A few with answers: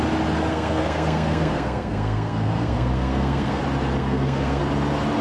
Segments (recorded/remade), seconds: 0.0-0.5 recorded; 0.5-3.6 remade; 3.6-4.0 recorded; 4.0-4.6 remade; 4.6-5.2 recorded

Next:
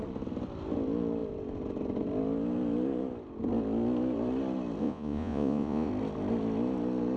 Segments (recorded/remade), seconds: 0.0-4.8 recorded; 4.8-5.9 remade; 5.9-7.2 recorded

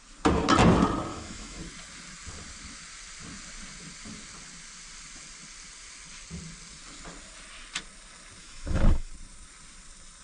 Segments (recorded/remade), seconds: 0.0-1.1 recorded; 1.1-1.6 remade; 1.6-8.4 recorded; 8.4-9.1 remade; 9.1-10.2 recorded

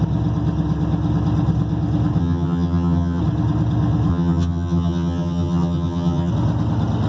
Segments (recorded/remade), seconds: 0.0-2.2 recorded; 2.2-3.2 remade; 3.2-4.1 recorded; 4.1-6.3 remade; 6.3-7.1 recorded

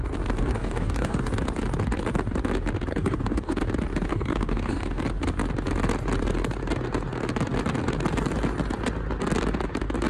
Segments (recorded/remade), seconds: 0.0-0.4 recorded; 0.4-1.3 remade; 1.3-2.9 recorded; 2.9-3.6 remade; 3.6-4.1 recorded; 4.1-5.0 remade; 5.0-10.1 recorded

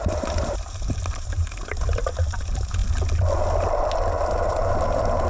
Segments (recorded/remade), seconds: 0.0-2.8 remade; 2.8-4.3 recorded; 4.3-5.3 remade